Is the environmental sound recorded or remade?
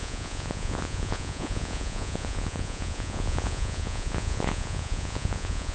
remade